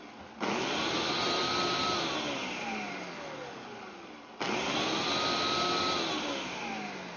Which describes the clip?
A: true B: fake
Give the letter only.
A